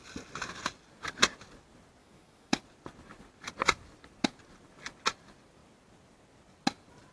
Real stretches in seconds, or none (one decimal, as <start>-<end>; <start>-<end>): 0.0-2.0; 2.6-7.1